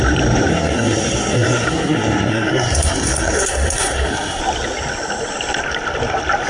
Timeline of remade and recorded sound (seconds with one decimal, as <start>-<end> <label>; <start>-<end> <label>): 0.0-0.5 recorded; 0.5-4.4 remade; 4.4-6.5 recorded

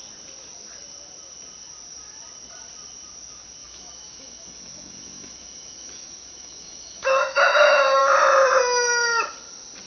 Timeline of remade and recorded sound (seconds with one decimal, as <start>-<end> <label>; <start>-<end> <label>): 0.0-3.6 recorded; 3.6-8.0 remade; 8.0-9.9 recorded